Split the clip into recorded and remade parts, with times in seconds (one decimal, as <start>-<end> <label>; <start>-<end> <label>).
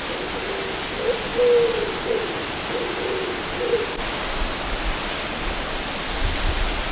0.0-6.9 recorded